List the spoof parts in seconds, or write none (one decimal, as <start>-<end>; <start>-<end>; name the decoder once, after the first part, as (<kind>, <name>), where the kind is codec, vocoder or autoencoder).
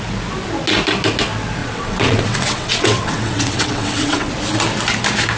1.6-4.3 (vocoder, WaveNeXt)